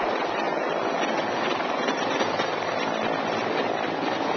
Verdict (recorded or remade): recorded